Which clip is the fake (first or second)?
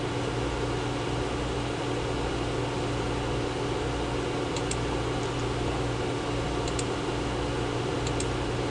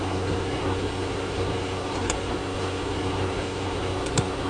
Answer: second